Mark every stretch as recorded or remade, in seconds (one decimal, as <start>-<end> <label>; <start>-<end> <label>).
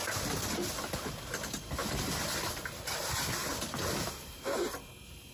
0.0-0.8 remade; 0.8-1.8 recorded; 1.8-2.5 remade; 2.5-3.4 recorded; 3.4-4.3 remade; 4.3-5.3 recorded